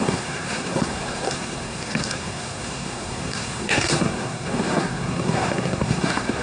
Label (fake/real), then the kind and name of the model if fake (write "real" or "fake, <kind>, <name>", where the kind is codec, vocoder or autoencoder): fake, codec, SNAC